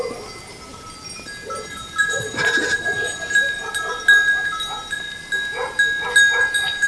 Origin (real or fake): real